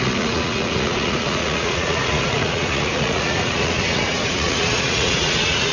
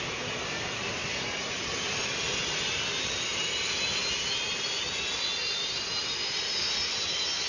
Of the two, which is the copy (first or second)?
first